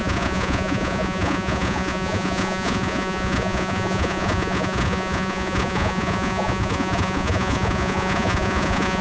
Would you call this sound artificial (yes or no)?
yes